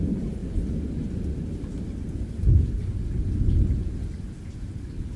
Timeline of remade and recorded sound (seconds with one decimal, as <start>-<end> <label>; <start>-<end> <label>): 0.0-5.2 recorded